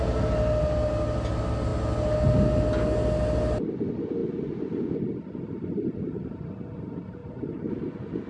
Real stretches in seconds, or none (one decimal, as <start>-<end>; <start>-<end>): 0.0-7.2; 7.9-8.3